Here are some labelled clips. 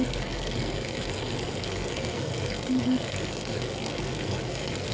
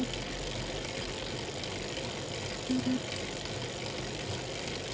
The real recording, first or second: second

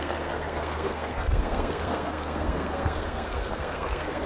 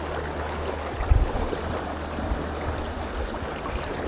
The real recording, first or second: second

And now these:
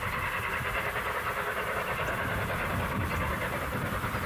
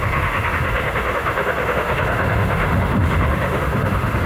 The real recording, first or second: first